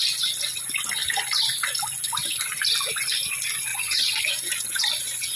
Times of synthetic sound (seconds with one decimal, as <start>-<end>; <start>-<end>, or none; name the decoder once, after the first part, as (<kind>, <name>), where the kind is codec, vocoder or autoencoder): 3.7-5.4 (vocoder, Vocos)